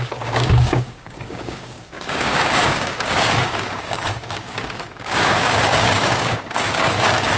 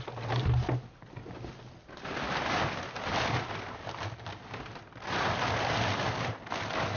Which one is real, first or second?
second